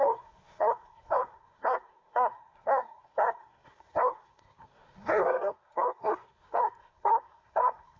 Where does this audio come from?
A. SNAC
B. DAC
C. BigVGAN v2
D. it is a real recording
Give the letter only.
A